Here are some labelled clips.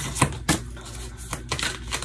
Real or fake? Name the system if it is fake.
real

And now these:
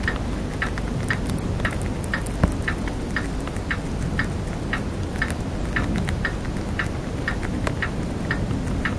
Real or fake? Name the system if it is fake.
real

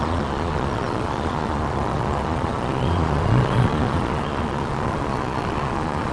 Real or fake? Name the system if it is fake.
fake, vocoder, Vocos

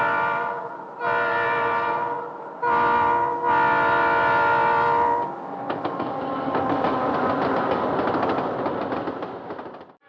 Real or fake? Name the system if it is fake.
real